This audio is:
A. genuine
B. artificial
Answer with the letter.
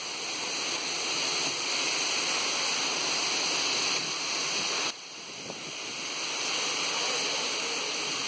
A